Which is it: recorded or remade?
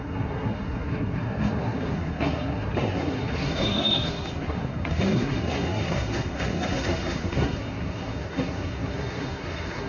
remade